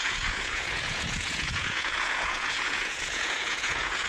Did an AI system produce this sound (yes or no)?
yes